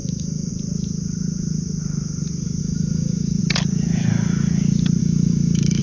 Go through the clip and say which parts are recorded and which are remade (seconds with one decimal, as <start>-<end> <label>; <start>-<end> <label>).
0.0-0.5 remade; 0.5-2.6 recorded; 2.6-3.4 remade; 3.4-5.0 recorded; 5.0-5.8 remade